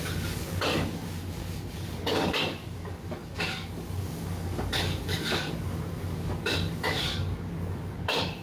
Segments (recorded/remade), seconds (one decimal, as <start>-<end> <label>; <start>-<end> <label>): 0.0-8.4 remade